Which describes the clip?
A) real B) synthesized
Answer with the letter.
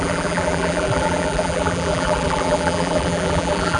B